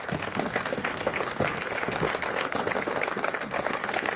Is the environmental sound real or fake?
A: fake